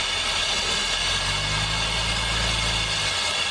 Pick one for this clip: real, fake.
real